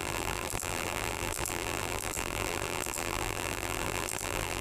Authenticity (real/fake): fake